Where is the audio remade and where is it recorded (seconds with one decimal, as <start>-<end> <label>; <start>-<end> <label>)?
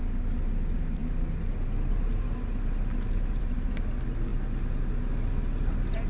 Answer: 0.0-6.1 recorded